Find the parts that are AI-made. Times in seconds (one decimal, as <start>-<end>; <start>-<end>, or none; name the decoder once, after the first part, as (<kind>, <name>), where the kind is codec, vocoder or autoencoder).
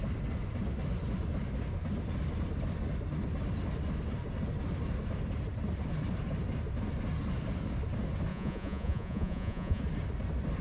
8.3-9.8 (vocoder, Vocos)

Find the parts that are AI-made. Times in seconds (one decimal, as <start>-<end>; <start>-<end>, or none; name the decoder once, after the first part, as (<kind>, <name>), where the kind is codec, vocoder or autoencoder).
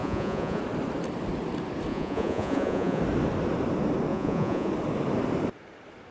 0.0-0.6 (vocoder, Vocos); 1.9-3.0; 4.1-4.7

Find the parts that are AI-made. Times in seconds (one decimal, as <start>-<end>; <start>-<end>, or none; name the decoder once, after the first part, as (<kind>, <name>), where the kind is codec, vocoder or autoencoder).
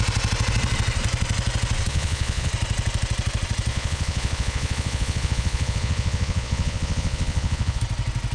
1.9-2.5 (vocoder, Vocos); 3.7-7.8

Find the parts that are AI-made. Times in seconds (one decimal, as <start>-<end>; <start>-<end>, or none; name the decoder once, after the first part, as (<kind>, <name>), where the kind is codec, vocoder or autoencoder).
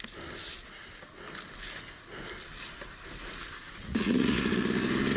3.8-4.4 (vocoder, Vocos)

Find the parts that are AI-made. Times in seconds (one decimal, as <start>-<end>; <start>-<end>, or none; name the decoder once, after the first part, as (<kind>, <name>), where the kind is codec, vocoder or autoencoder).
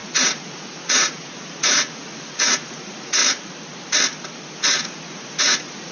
0.0-3.2 (vocoder, Vocos); 4.6-5.9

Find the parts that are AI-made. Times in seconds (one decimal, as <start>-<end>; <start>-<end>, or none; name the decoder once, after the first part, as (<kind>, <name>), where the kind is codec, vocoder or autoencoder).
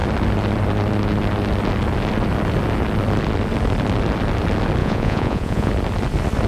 4.8-5.7 (vocoder, Vocos)